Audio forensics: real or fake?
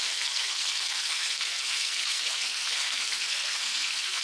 fake